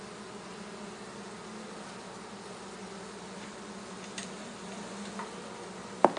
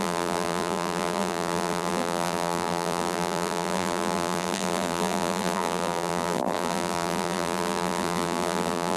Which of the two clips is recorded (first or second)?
first